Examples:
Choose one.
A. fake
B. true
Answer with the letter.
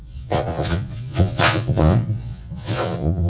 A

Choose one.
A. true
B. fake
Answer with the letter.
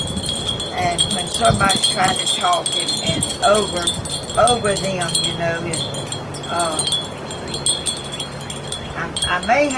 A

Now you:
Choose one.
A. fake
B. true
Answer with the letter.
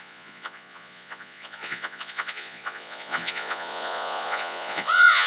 A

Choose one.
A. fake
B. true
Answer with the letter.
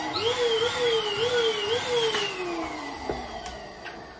B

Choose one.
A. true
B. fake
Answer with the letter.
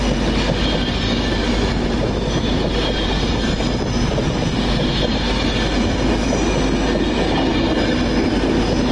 A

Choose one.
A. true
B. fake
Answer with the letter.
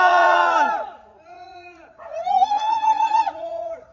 B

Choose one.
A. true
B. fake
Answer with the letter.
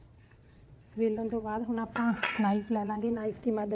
B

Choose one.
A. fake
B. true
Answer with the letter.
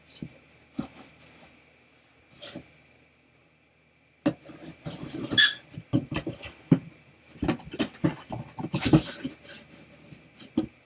B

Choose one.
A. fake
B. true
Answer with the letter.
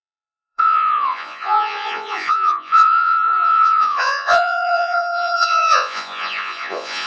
A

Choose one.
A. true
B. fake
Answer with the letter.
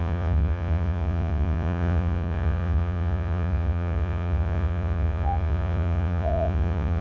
B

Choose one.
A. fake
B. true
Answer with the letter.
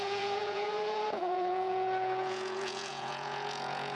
A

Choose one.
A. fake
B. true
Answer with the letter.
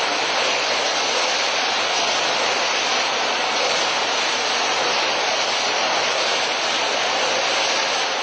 B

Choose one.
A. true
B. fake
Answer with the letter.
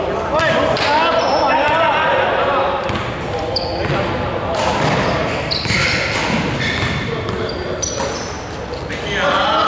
A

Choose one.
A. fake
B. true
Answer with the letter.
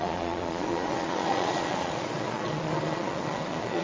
A